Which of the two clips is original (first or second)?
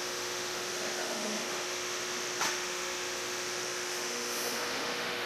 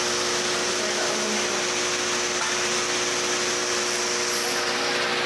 second